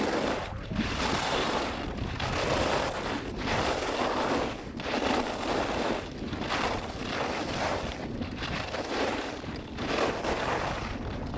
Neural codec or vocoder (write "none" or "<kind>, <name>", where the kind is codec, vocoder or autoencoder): none